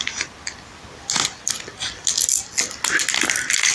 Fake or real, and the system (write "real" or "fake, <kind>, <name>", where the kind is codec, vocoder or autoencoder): real